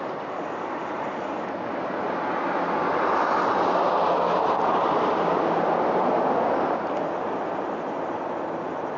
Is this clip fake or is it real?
real